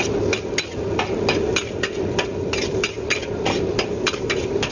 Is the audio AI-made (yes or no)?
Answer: no